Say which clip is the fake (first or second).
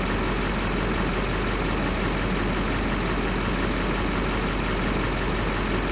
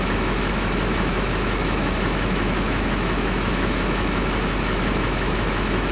second